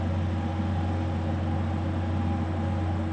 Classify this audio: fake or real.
real